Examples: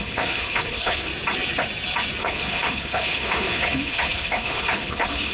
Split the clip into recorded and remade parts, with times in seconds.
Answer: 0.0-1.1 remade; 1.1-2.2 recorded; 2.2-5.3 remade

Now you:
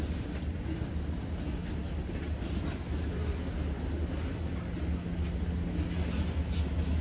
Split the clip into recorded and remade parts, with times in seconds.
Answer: 0.0-7.0 recorded

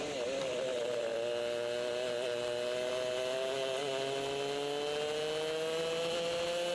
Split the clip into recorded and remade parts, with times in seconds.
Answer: 0.0-6.7 recorded

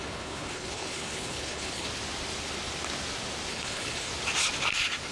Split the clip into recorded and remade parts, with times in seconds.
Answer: 0.0-1.9 remade; 1.9-3.5 recorded; 3.5-4.1 remade; 4.1-5.1 recorded

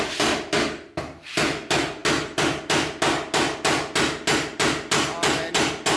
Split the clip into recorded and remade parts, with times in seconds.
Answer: 0.0-6.0 recorded

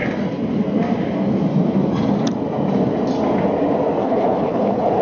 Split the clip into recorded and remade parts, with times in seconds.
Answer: 0.0-4.0 recorded; 4.0-5.0 remade

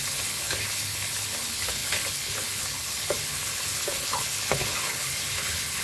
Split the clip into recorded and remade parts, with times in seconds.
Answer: 0.0-5.8 remade

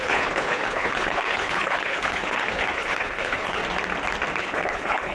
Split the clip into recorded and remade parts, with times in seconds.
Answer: 0.0-3.6 remade; 3.6-4.4 recorded; 4.4-5.1 remade